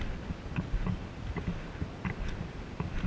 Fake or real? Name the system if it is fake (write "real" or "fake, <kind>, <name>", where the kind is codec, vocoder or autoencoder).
real